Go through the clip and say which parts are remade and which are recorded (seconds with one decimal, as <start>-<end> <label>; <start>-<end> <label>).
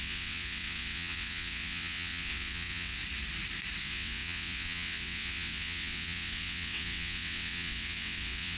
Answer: 0.0-3.0 remade; 3.0-3.8 recorded; 3.8-8.6 remade